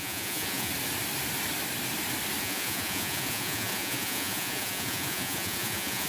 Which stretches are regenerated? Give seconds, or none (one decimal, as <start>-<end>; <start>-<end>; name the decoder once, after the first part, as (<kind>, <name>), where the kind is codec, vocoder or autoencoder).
0.0-0.7 (vocoder, Vocos); 2.4-6.1